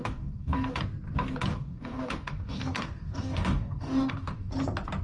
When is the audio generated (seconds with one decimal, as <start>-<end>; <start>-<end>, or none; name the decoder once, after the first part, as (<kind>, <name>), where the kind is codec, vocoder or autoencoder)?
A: 0.0-0.8 (codec, DAC); 1.5-4.5